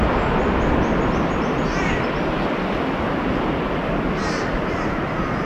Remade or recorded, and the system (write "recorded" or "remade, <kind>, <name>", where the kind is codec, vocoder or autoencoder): recorded